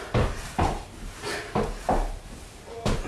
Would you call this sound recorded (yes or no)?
yes